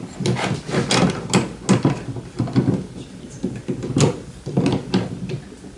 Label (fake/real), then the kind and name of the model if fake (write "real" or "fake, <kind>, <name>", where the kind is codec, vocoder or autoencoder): real